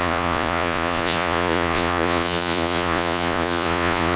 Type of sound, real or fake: fake